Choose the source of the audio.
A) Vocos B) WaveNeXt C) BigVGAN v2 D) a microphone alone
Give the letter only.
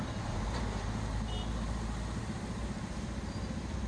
D